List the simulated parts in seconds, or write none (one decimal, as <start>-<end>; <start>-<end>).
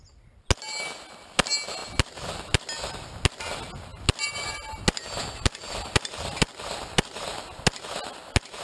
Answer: none